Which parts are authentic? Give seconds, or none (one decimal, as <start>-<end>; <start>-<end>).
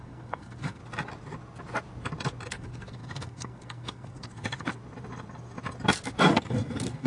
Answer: 0.8-2.5; 4.8-6.3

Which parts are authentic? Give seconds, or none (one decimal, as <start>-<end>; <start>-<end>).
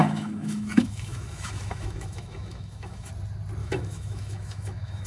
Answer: 3.1-3.6